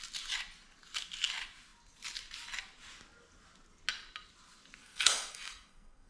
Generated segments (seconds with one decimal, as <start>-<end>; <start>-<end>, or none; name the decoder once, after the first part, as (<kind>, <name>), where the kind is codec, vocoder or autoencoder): 4.8-6.1 (codec, SNAC)